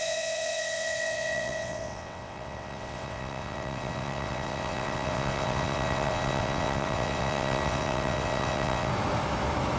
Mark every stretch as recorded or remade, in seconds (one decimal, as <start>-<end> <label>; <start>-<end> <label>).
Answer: 0.0-8.9 remade; 8.9-9.8 recorded